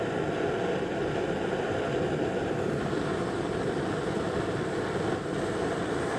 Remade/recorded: recorded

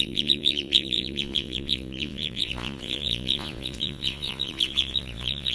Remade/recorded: remade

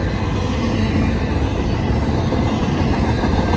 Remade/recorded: recorded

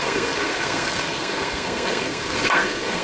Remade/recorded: remade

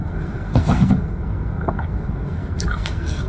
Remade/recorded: remade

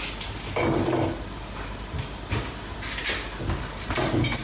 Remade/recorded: recorded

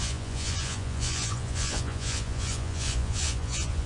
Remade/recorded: remade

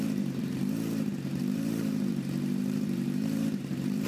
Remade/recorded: remade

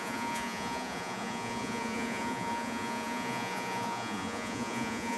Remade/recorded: remade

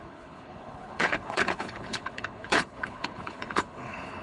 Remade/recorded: remade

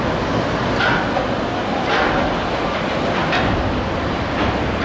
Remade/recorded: recorded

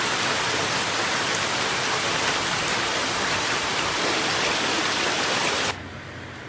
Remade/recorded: recorded